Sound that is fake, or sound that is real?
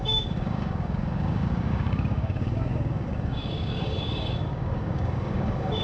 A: fake